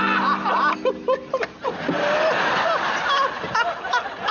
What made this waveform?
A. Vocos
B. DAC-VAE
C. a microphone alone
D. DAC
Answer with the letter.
C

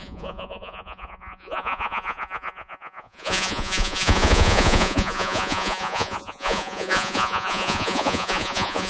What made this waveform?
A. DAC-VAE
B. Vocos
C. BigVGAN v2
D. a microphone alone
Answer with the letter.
B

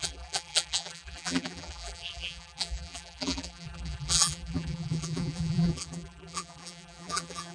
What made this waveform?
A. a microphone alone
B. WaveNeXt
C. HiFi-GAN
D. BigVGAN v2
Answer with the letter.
D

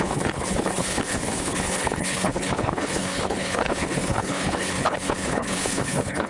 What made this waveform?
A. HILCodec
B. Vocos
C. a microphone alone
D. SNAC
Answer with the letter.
A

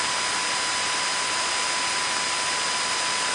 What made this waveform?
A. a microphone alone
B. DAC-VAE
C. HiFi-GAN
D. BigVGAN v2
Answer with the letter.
A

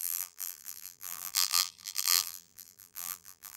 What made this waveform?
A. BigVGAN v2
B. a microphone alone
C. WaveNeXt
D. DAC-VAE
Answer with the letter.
A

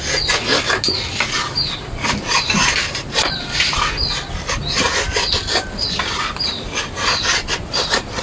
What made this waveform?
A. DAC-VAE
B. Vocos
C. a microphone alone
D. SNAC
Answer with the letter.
C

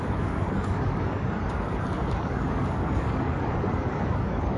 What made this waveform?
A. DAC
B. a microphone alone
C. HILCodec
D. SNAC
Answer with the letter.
A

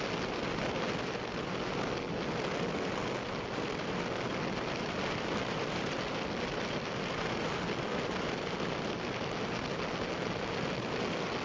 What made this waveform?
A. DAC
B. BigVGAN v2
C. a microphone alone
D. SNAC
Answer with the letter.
C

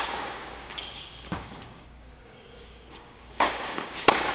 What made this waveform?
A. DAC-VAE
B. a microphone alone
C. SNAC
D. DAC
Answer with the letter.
D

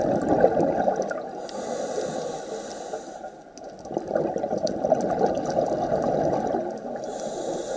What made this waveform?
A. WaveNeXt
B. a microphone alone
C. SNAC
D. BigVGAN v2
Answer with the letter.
B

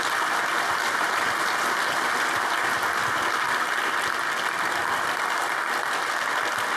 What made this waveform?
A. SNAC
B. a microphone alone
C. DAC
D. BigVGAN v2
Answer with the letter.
B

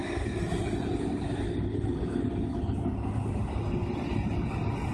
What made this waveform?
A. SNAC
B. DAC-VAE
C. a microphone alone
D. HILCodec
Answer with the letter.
C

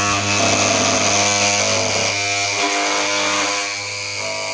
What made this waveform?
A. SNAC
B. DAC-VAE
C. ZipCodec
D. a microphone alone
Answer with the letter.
D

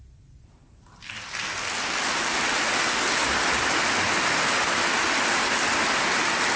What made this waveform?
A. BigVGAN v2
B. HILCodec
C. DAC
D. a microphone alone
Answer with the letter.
D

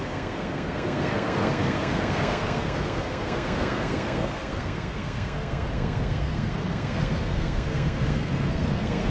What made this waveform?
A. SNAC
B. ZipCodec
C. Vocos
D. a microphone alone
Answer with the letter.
A